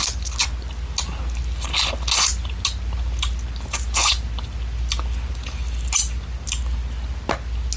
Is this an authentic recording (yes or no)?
yes